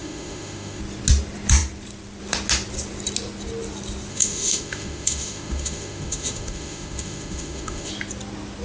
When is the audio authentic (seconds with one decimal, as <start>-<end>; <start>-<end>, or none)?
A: 0.8-4.1; 7.9-8.6